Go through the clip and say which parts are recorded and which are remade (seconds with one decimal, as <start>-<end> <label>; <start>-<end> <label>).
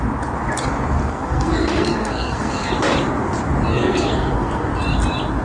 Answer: 0.0-1.0 recorded; 1.0-2.7 remade; 2.7-3.7 recorded; 3.7-4.7 remade; 4.7-5.4 recorded